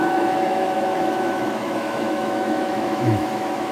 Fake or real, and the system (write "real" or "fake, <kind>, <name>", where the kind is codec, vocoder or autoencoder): fake, autoencoder, DAC-VAE